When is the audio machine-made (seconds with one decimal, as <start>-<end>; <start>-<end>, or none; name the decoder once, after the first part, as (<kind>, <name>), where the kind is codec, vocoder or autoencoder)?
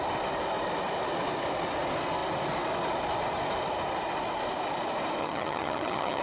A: 5.2-6.2 (vocoder, HiFi-GAN)